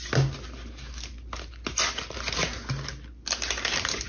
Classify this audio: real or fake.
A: real